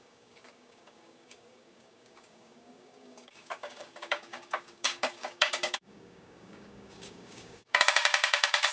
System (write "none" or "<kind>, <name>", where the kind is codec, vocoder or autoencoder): codec, DAC